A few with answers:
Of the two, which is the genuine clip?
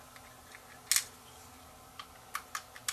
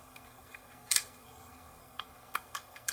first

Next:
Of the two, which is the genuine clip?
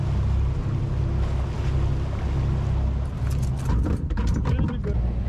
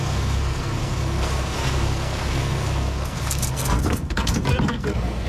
first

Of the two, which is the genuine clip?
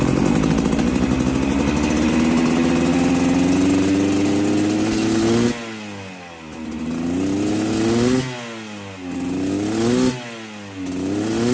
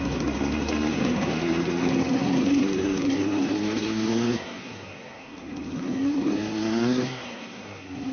first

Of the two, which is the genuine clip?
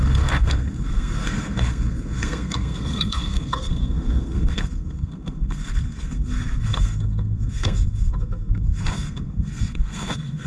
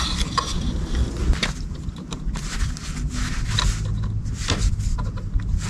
second